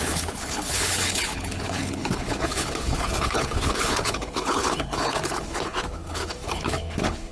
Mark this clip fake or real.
fake